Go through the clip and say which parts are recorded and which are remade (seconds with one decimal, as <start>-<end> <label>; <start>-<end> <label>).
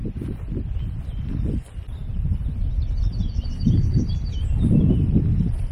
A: 0.0-5.7 recorded